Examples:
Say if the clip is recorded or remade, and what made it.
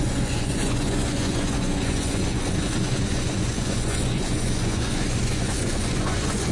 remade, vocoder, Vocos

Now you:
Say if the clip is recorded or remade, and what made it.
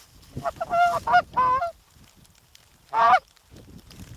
remade, vocoder, BigVGAN v2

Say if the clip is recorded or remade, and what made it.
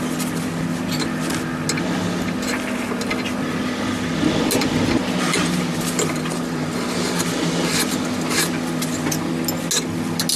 recorded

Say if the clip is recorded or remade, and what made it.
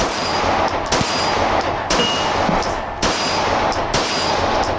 recorded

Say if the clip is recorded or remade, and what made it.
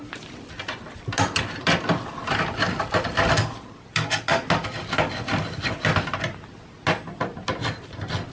recorded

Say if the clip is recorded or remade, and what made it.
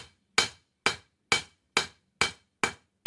recorded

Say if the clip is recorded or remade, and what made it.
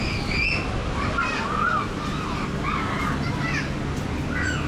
recorded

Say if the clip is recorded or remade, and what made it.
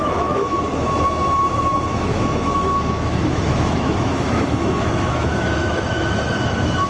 remade, autoencoder, DAC-VAE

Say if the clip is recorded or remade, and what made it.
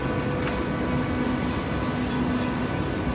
recorded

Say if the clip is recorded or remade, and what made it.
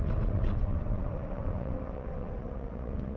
remade, vocoder, WaveNeXt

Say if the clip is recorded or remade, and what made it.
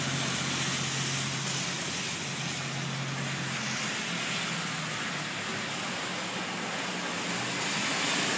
recorded